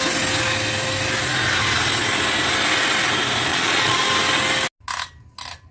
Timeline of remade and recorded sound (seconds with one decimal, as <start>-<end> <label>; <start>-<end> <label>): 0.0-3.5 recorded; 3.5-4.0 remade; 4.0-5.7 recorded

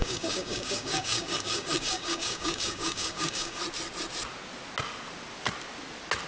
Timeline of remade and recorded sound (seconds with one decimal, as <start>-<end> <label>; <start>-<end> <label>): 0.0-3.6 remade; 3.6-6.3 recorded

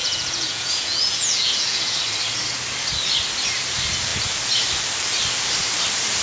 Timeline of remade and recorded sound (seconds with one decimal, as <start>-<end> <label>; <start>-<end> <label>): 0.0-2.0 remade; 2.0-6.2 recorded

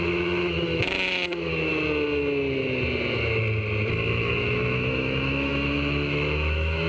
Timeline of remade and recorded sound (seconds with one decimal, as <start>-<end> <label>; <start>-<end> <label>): 0.0-1.7 remade; 1.7-4.1 recorded; 4.1-6.9 remade

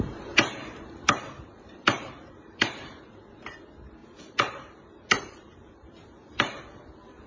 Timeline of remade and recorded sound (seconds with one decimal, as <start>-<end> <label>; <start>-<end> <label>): 0.0-0.6 recorded; 0.6-3.0 remade; 3.0-4.0 recorded; 4.0-6.6 remade; 6.6-7.3 recorded

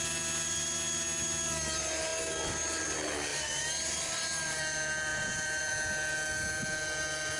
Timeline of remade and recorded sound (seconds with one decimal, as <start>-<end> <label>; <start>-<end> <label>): 0.0-3.3 recorded; 3.3-4.6 remade; 4.6-5.1 recorded; 5.1-5.7 remade; 5.7-7.4 recorded